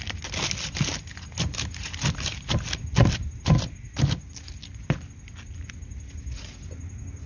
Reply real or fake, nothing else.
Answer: real